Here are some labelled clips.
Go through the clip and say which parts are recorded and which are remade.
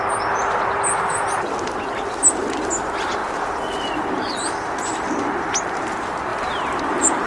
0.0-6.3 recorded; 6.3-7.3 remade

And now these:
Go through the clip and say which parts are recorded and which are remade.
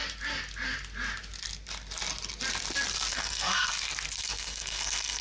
0.0-3.1 recorded; 3.1-3.7 remade; 3.7-4.2 recorded; 4.2-5.2 remade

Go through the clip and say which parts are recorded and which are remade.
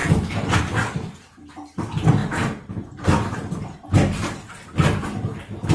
0.0-5.7 recorded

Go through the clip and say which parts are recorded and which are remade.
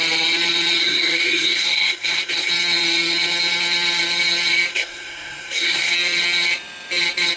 0.0-0.8 recorded; 0.8-2.5 remade; 2.5-4.7 recorded; 4.7-5.9 remade; 5.9-7.4 recorded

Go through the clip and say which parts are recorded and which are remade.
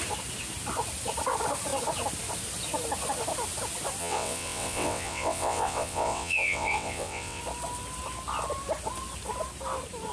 0.0-4.0 recorded; 4.0-7.4 remade; 7.4-10.1 recorded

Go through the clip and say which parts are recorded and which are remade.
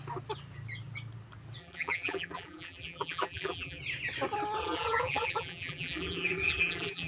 0.0-1.6 recorded; 1.6-3.8 remade; 3.8-4.6 recorded; 4.6-7.1 remade